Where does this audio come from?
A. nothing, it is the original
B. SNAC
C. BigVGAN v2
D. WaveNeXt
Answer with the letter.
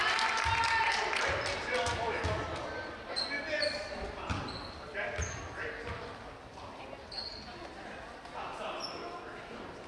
A